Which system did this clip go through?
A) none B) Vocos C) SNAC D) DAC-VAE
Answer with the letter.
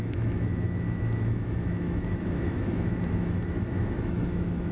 D